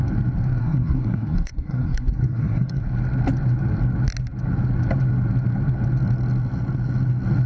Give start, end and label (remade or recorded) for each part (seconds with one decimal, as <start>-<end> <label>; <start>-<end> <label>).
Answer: 0.0-0.6 recorded; 0.6-2.8 remade; 2.8-7.5 recorded